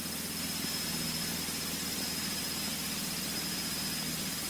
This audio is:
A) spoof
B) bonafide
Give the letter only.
B